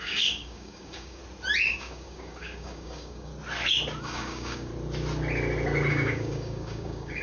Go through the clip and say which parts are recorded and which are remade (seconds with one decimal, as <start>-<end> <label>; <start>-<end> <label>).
0.0-1.2 remade; 1.2-1.7 recorded; 1.7-3.3 remade; 3.3-4.0 recorded; 4.0-4.7 remade; 4.7-5.9 recorded; 5.9-7.2 remade